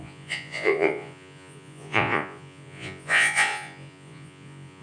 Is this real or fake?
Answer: fake